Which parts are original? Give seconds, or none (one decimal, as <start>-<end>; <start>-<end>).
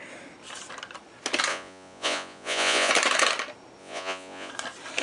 0.0-1.5; 2.9-3.8; 4.5-5.0